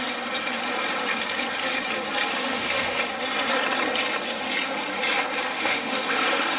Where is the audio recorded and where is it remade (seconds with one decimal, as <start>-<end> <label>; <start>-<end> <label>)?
0.0-2.3 recorded; 2.3-3.0 remade; 3.0-5.5 recorded; 5.5-6.6 remade